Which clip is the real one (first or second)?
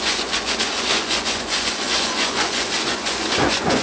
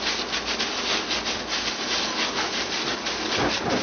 second